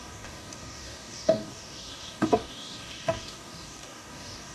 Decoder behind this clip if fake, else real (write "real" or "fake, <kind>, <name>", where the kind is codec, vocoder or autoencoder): fake, codec, DAC